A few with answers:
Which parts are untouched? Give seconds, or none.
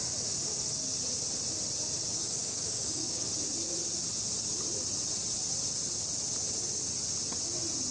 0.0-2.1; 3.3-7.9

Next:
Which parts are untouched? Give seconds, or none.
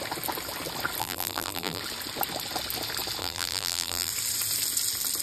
0.0-1.0; 1.8-3.2; 4.1-5.2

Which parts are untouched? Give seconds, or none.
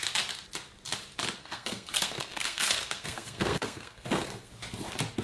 0.0-1.4; 4.5-5.2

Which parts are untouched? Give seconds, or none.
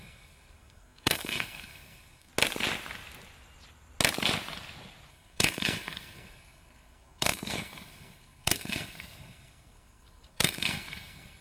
2.3-5.1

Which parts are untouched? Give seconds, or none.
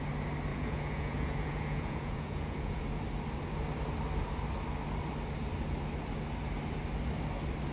0.0-0.5; 2.8-7.7